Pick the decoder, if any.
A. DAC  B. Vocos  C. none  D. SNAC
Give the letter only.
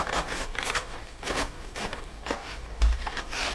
A